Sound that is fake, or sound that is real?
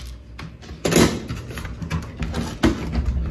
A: real